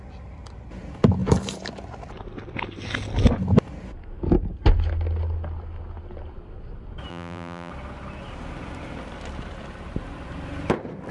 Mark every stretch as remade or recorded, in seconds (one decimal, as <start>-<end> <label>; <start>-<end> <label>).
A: 0.0-7.1 recorded; 7.1-7.7 remade; 7.7-11.1 recorded